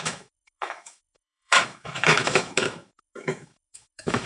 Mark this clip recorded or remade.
remade